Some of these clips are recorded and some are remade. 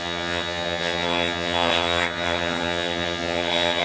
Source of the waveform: remade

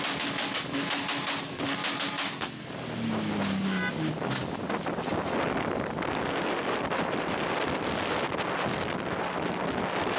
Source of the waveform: recorded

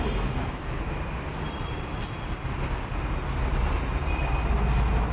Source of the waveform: recorded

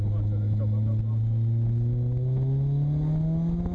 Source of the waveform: recorded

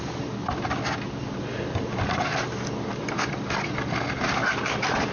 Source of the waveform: recorded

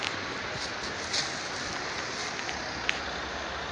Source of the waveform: recorded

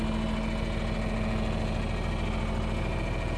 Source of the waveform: recorded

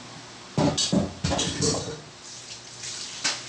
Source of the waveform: recorded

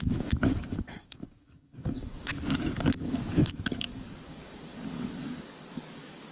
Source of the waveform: remade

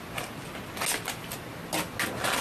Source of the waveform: recorded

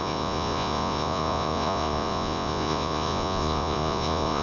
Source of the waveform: remade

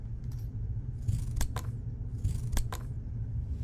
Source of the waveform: recorded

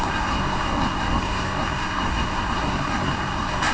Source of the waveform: remade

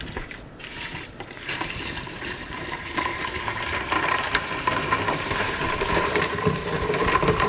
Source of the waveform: remade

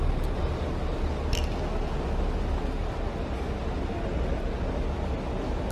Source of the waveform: recorded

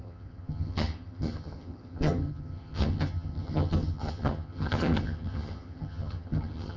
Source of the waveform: remade